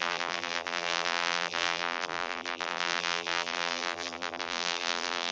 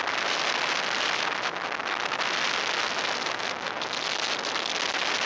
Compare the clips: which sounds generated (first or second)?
first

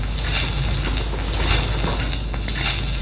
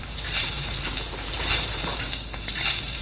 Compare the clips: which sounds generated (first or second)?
second